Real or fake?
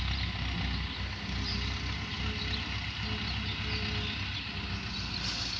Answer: real